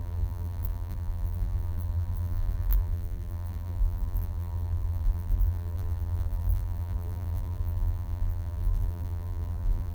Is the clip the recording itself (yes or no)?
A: no